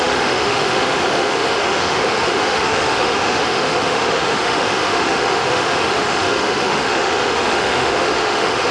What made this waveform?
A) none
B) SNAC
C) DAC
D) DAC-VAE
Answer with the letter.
D